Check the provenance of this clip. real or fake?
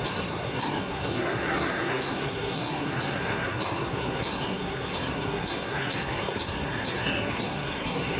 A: fake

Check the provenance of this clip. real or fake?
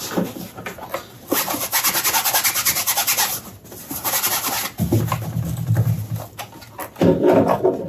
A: real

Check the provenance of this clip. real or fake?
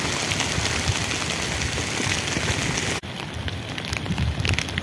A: real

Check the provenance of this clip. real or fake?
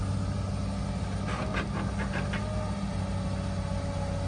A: real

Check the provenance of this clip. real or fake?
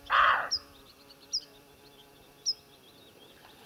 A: real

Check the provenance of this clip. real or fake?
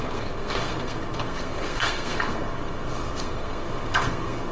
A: fake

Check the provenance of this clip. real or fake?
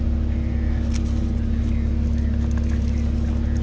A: real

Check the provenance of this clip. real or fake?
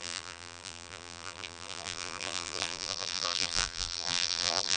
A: fake